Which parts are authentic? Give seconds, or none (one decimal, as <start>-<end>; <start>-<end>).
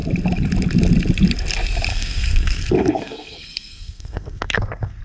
0.0-1.9